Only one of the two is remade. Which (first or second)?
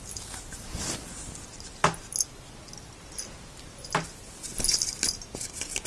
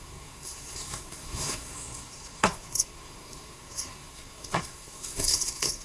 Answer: second